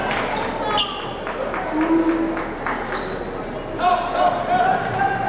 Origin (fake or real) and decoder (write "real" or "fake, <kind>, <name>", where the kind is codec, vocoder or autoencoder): real